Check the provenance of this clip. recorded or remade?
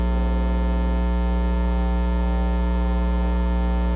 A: recorded